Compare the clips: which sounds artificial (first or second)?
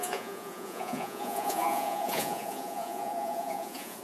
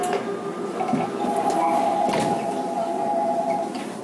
first